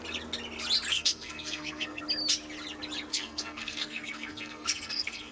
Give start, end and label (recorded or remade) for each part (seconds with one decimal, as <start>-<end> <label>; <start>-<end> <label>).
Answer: 0.0-0.9 recorded; 0.9-2.0 remade; 2.0-3.1 recorded; 3.1-5.3 remade